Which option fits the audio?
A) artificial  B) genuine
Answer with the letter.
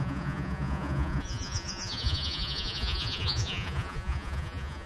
A